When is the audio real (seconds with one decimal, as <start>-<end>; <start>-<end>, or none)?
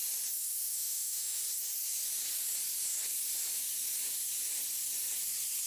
0.0-0.6; 1.4-5.7